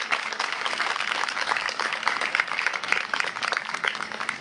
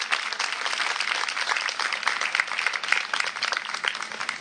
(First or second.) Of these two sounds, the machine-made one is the first